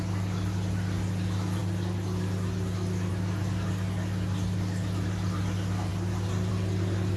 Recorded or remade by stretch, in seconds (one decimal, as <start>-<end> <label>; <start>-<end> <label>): 0.0-7.2 recorded